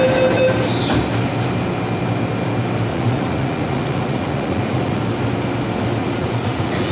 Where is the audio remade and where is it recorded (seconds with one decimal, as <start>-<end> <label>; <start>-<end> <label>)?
0.0-2.9 recorded; 2.9-5.0 remade; 5.0-6.0 recorded; 6.0-6.9 remade